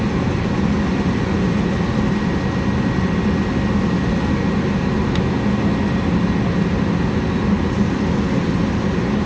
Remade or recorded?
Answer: recorded